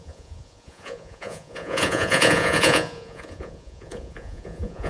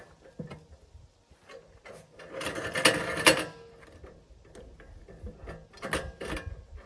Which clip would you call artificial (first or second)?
first